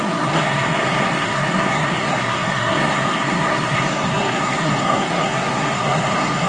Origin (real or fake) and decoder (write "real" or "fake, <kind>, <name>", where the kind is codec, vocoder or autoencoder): fake, codec, SNAC